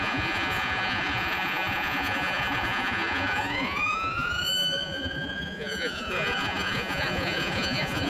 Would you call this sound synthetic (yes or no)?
yes